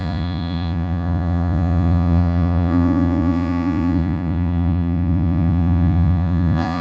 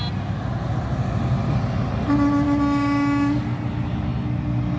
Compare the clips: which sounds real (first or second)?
second